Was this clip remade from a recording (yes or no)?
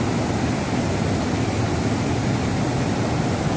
no